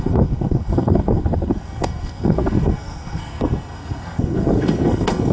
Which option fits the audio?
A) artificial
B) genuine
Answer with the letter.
A